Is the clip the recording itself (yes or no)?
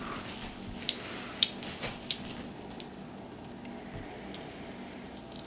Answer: yes